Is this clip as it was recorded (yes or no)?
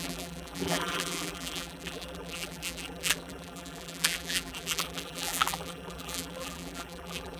no